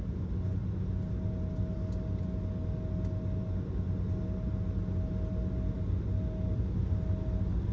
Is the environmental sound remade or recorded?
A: recorded